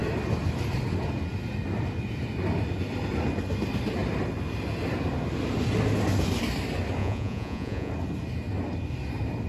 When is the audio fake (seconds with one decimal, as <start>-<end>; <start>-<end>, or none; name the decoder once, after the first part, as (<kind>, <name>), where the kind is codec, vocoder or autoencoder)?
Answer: 7.0-7.9 (vocoder, Vocos)